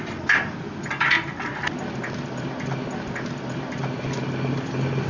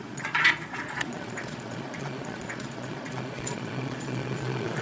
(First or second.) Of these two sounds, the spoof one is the second